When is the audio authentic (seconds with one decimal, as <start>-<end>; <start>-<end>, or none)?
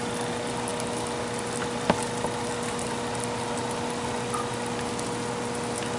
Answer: 0.0-6.0